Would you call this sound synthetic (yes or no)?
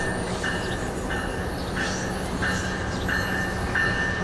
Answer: no